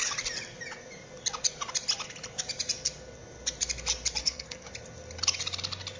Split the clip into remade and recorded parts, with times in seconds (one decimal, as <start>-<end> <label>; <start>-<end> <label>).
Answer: 0.0-4.2 recorded; 4.2-4.7 remade; 4.7-6.0 recorded